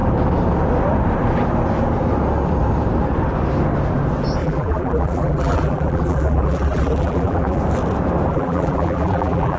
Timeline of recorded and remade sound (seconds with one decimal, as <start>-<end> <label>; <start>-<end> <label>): 0.0-4.4 recorded; 4.4-7.6 remade; 7.6-8.3 recorded; 8.3-9.6 remade